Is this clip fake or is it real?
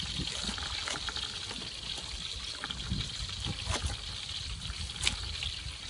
real